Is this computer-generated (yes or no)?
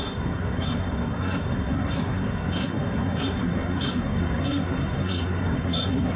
yes